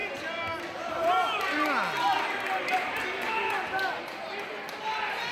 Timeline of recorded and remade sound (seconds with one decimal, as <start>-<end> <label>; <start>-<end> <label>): 0.0-5.3 recorded